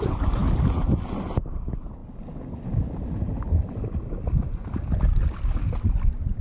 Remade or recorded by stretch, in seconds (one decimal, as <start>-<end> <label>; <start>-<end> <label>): 0.0-6.4 recorded